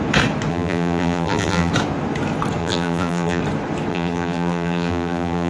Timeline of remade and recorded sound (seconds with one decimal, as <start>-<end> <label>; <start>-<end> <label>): 0.0-0.5 recorded; 0.5-1.7 remade; 1.7-2.6 recorded; 2.6-3.4 remade; 3.4-3.9 recorded; 3.9-5.5 remade